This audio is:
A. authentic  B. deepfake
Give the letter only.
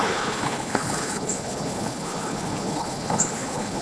B